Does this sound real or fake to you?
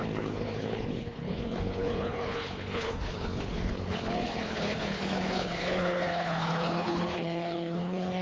fake